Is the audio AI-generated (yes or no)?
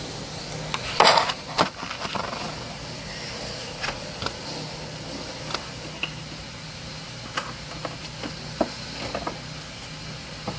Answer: no